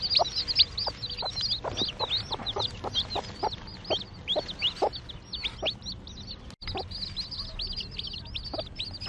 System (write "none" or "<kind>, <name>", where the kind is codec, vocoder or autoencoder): none